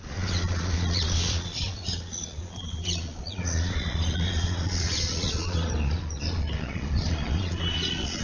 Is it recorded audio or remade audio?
remade